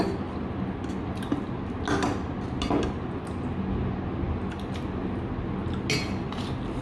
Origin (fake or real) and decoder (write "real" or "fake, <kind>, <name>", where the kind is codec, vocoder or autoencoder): real